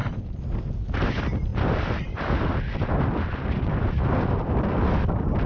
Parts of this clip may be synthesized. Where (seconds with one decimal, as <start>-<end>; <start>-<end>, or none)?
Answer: 0.0-0.7; 1.5-4.8